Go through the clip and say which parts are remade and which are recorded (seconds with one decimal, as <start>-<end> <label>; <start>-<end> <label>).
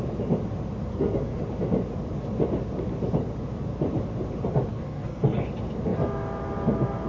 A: 0.0-0.9 recorded; 0.9-1.4 remade; 1.4-4.7 recorded; 4.7-5.4 remade; 5.4-7.1 recorded